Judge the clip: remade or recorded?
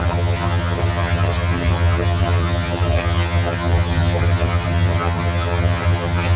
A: remade